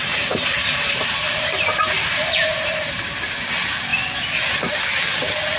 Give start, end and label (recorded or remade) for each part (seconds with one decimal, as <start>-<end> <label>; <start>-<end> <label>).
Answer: 0.0-0.6 recorded; 0.6-3.1 remade; 3.1-5.6 recorded